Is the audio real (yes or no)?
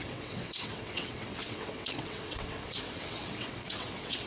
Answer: no